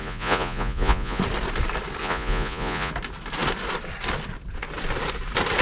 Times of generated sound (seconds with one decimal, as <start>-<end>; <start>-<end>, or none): 0.0-1.2; 2.0-2.9